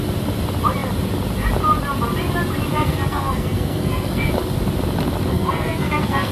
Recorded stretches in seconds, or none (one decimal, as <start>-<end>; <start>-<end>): 0.0-2.7; 4.3-5.3